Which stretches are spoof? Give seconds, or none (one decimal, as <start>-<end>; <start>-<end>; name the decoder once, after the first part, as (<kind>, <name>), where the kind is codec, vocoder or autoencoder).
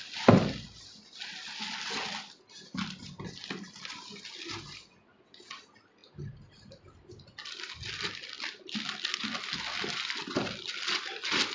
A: 5.0-5.6 (vocoder, WaveNeXt)